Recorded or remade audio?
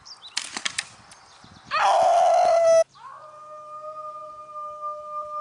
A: recorded